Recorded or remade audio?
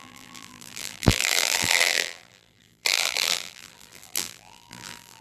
remade